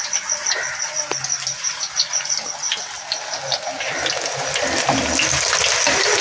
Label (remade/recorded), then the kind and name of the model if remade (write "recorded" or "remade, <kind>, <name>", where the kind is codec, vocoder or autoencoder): recorded